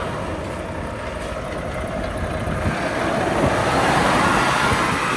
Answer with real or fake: real